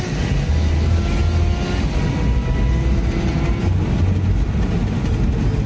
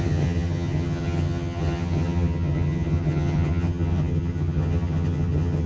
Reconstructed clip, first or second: second